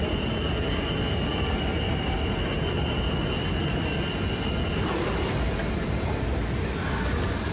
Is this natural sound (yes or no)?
yes